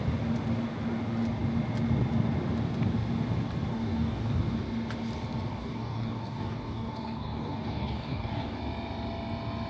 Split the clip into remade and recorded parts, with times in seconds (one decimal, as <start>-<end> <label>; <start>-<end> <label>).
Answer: 0.0-3.7 recorded; 3.7-4.4 remade; 4.4-5.5 recorded; 5.5-8.6 remade; 8.6-9.7 recorded